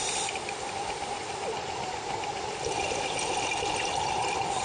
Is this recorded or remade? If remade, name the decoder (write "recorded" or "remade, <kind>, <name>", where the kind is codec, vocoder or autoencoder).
recorded